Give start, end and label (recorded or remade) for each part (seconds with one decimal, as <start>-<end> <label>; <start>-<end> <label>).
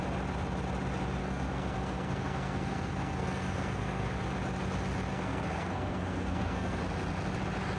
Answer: 0.0-1.2 recorded; 1.2-4.1 remade; 4.1-5.1 recorded; 5.1-6.8 remade; 6.8-7.8 recorded